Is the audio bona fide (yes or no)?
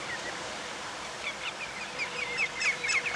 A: yes